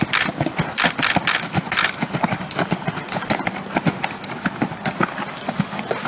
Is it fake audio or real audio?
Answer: real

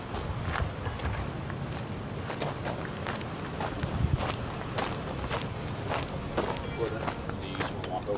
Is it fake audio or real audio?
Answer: real